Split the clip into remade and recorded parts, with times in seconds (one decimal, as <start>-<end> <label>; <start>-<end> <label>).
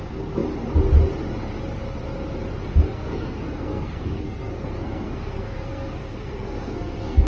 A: 0.0-2.7 recorded; 2.7-7.3 remade